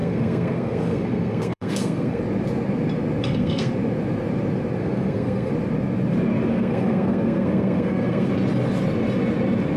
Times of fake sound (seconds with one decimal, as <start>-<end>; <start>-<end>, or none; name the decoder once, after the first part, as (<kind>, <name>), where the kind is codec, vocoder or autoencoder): 0.0-2.2 (codec, SNAC); 3.2-3.7; 4.8-5.5; 6.5-8.3